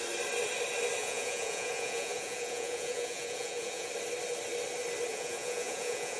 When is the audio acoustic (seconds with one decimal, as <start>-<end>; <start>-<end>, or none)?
0.0-1.0; 3.9-5.1

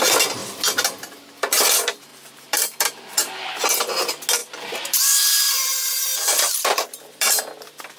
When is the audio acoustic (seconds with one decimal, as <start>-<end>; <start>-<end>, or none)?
0.0-2.1; 3.5-4.4; 7.4-8.0

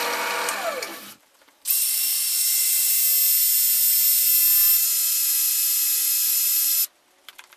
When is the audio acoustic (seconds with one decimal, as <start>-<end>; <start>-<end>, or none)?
0.0-0.9; 2.9-7.6

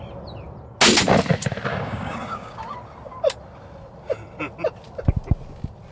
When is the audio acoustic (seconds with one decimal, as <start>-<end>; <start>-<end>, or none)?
0.0-1.7; 2.6-5.9

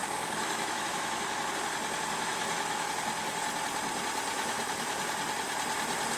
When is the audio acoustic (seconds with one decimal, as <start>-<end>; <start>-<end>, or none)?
1.5-2.3; 2.9-4.3; 5.0-6.2